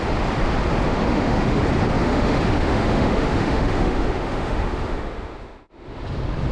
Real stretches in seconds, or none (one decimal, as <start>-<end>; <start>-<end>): 0.0-0.9; 1.6-2.1; 6.0-6.5